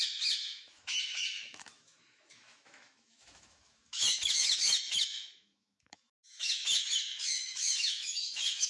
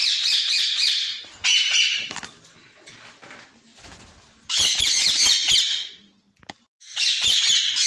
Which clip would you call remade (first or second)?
first